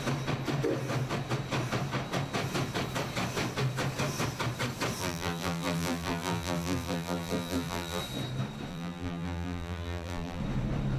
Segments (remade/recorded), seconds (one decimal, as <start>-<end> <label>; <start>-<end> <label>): 0.0-5.0 recorded; 5.0-8.0 remade; 8.0-8.7 recorded; 8.7-10.4 remade; 10.4-11.0 recorded